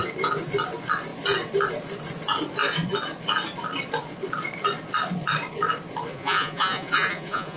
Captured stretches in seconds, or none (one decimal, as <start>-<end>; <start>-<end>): 0.0-6.1